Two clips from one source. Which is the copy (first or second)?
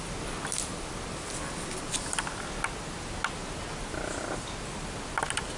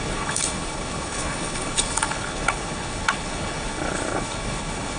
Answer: second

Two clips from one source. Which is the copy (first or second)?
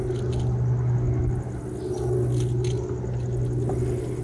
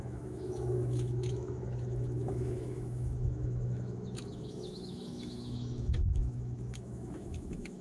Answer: second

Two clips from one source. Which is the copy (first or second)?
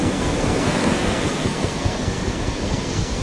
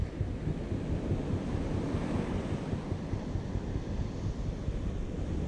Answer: first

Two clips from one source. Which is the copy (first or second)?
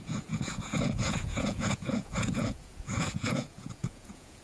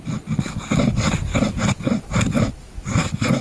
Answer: first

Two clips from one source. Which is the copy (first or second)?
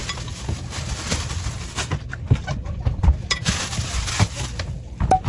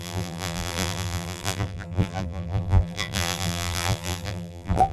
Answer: second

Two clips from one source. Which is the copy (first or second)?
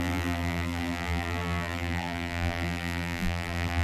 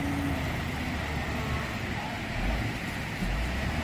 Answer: first